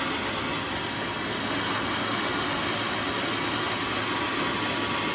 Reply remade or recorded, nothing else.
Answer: recorded